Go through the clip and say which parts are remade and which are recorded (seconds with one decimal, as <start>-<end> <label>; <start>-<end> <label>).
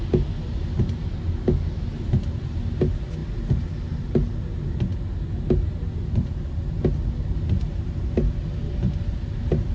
0.0-9.7 recorded